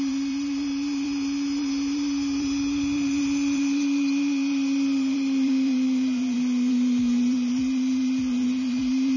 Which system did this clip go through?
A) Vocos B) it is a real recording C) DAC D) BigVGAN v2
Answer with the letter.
D